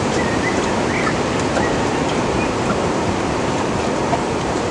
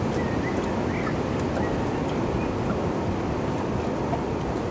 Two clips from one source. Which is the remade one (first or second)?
first